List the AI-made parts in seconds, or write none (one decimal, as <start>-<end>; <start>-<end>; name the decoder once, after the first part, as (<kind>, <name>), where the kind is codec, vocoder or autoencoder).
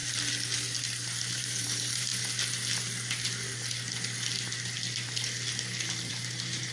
1.3-2.1 (vocoder, BigVGAN v2); 6.1-6.7